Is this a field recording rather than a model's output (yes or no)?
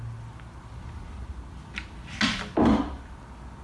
yes